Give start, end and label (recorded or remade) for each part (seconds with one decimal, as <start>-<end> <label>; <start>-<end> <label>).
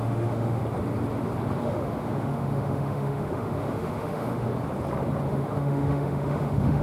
0.0-0.6 remade; 0.6-1.6 recorded; 1.6-4.5 remade; 4.5-5.3 recorded; 5.3-6.8 remade